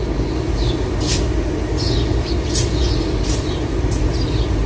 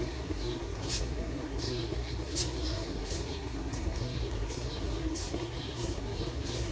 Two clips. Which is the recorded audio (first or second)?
first